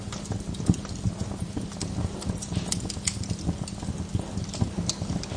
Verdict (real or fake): real